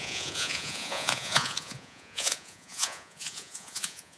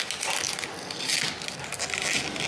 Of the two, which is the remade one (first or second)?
first